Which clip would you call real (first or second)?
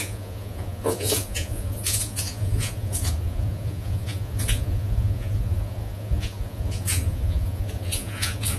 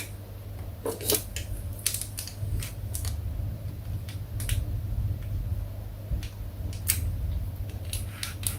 second